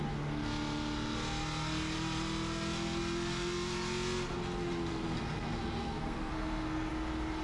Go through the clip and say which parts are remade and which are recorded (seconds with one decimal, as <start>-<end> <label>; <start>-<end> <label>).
0.0-4.9 recorded; 4.9-6.9 remade; 6.9-7.4 recorded